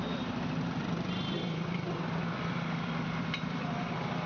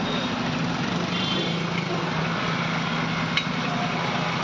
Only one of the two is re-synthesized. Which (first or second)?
first